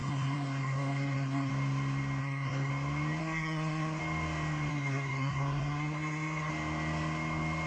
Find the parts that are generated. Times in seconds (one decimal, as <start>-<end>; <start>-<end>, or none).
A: 0.0-1.5; 2.2-2.7; 3.2-4.0; 4.7-6.5